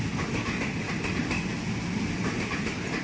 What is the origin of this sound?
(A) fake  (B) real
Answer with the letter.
B